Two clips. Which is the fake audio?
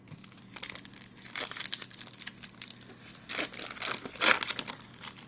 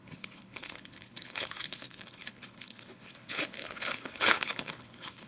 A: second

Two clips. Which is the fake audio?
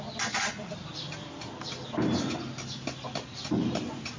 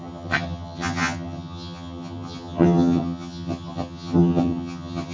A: second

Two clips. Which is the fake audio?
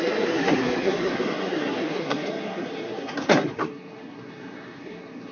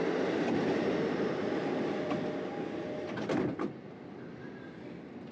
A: first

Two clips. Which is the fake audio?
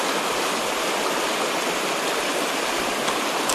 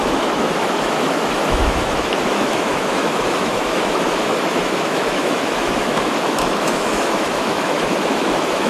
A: second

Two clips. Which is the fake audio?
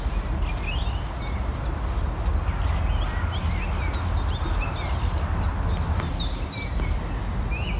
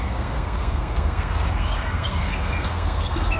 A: second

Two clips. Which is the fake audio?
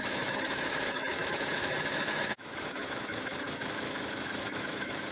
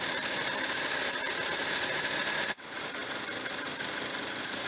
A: first